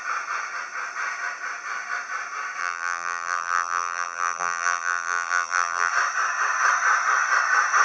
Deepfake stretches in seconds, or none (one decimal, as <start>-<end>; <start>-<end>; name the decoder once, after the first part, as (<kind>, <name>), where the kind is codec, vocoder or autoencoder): 2.6-5.9 (vocoder, BigVGAN v2)